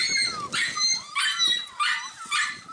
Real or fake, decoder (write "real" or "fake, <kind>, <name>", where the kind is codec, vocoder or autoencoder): real